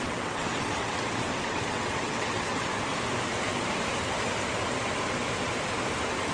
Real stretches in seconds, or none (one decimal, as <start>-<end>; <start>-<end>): 2.7-6.3